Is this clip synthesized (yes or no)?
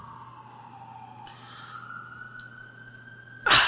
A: no